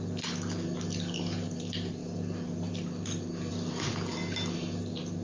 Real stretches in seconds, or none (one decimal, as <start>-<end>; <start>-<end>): 0.0-5.2